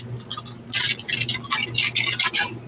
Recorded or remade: recorded